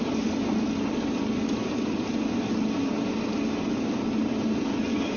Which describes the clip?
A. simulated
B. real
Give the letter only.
B